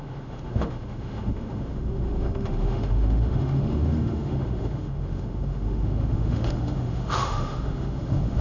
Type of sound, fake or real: fake